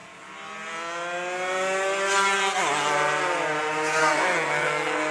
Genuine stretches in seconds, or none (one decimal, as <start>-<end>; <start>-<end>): 0.0-4.0